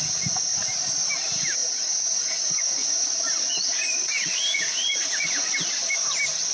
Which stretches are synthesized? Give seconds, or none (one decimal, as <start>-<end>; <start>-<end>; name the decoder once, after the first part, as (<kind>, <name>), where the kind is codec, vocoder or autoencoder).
1.6-5.5 (vocoder, Vocos)